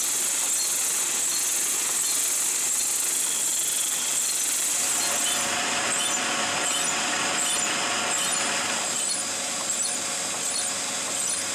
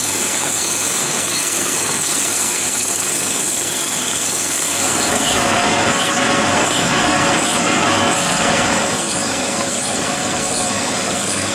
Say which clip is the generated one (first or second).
second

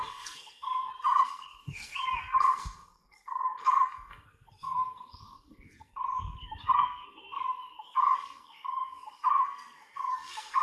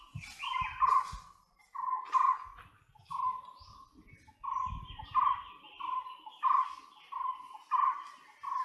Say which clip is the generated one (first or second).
first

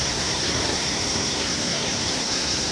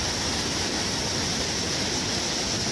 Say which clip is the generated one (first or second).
first